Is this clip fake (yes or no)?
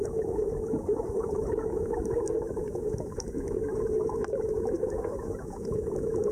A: yes